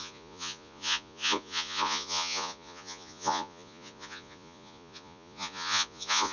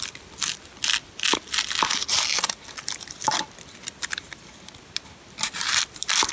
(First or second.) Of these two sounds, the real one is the second